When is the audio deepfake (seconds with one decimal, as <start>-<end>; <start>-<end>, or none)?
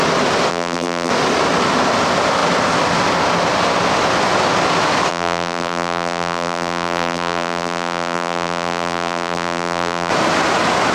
0.5-1.1; 5.1-10.1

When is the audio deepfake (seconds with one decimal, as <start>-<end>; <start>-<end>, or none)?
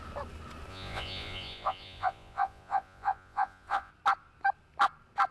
0.7-3.9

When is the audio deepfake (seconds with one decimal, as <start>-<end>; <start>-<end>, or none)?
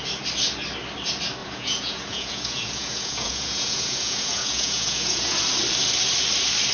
1.4-5.4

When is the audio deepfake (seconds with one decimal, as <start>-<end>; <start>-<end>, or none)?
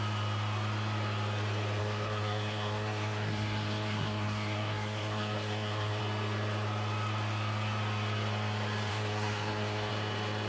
1.8-6.0; 8.9-9.9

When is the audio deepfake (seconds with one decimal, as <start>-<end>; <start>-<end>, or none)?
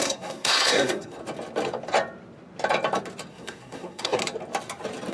0.0-1.2; 3.3-4.2